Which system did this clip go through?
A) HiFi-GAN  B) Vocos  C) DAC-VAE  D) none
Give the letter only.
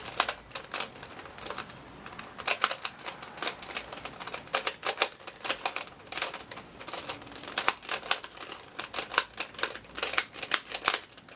D